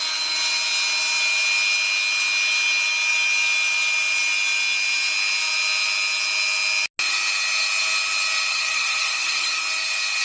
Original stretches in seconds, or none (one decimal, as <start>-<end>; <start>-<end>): 0.0-8.5; 9.6-10.2